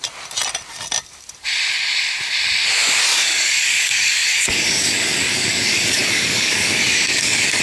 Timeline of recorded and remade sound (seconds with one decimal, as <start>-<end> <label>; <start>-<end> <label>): 0.0-3.0 recorded; 3.0-7.6 remade